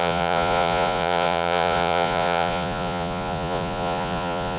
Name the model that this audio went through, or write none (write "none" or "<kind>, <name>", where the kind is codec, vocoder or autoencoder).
vocoder, Vocos